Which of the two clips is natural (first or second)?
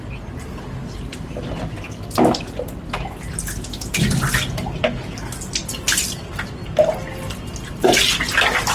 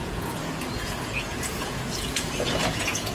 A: first